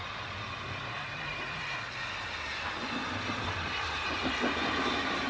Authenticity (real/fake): real